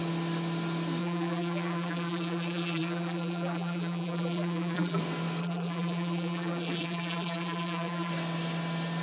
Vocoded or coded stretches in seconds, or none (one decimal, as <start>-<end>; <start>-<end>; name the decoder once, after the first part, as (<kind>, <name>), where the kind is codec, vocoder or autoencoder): 1.0-5.0 (vocoder, BigVGAN v2); 5.4-8.1

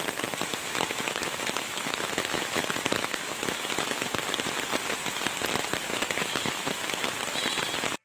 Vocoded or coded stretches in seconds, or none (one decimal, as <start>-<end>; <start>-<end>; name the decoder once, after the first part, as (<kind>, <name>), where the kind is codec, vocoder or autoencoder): 0.5-4.2 (autoencoder, DAC-VAE); 5.9-7.1

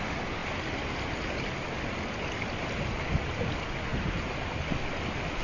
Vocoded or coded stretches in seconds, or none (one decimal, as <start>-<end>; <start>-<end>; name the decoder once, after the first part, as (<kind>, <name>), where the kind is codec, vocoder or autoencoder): none

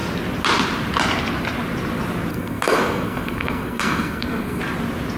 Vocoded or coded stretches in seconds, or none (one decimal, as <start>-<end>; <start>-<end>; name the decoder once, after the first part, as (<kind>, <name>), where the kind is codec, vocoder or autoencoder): 2.3-4.6 (codec, SNAC)

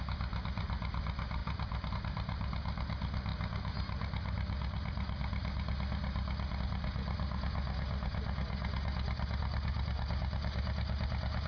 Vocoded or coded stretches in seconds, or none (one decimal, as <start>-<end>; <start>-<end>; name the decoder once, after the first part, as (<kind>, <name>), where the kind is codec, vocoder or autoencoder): none

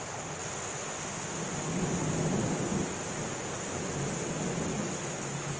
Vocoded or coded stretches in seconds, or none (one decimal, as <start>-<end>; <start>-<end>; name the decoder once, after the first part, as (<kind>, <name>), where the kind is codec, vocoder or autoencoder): 4.7-5.6 (autoencoder, DAC-VAE)